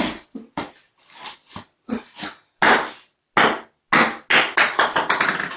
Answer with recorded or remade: recorded